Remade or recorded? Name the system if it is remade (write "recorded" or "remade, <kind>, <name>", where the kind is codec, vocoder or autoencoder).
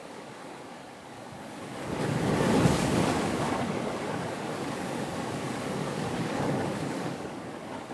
remade, codec, DAC